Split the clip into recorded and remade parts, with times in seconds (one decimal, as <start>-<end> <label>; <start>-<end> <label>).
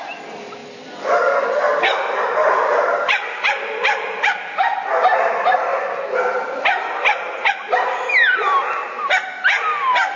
0.0-9.3 remade; 9.3-10.2 recorded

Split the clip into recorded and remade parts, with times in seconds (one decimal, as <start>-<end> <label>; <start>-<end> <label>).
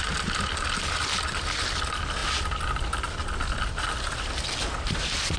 0.0-5.4 recorded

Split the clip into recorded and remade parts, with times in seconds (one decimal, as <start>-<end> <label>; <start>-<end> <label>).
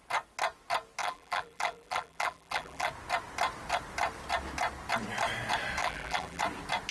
0.0-1.0 recorded; 1.0-2.9 remade; 2.9-5.8 recorded; 5.8-6.4 remade; 6.4-6.9 recorded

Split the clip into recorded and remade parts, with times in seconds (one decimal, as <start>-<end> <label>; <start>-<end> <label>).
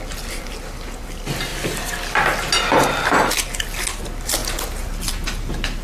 0.0-5.8 recorded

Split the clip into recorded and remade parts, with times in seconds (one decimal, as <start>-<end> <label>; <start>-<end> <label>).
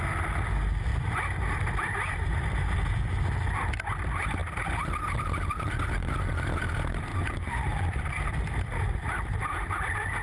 0.0-0.9 recorded; 0.9-2.7 remade; 2.7-7.1 recorded; 7.1-9.7 remade; 9.7-10.2 recorded